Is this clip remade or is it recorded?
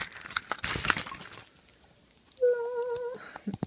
recorded